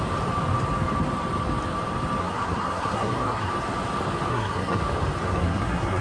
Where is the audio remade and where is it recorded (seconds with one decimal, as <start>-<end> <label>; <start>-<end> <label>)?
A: 0.0-2.2 recorded; 2.2-3.5 remade; 3.5-4.3 recorded; 4.3-4.8 remade; 4.8-5.3 recorded; 5.3-6.0 remade